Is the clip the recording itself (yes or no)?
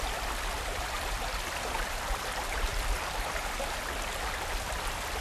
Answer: no